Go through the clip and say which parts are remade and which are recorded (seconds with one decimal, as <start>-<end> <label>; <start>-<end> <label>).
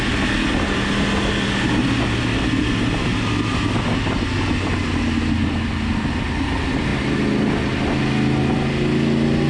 0.0-9.5 recorded